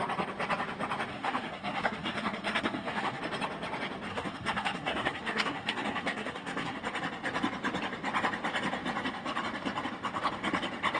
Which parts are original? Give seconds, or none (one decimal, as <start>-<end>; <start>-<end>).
0.0-1.1; 3.2-4.1; 6.8-11.0